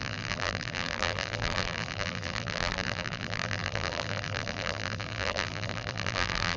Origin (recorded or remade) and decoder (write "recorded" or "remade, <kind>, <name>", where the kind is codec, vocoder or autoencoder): remade, vocoder, BigVGAN v2